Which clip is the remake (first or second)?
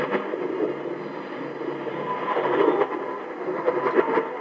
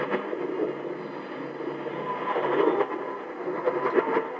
first